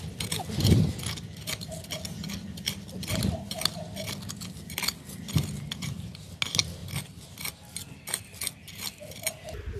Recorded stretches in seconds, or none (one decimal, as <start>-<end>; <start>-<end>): 0.0-9.8